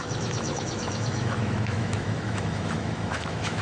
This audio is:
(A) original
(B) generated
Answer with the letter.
B